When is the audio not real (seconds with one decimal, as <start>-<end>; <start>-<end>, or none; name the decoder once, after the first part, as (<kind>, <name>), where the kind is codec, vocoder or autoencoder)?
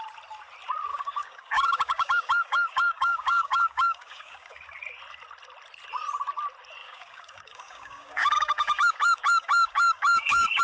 0.9-4.6 (codec, DAC); 6.8-10.6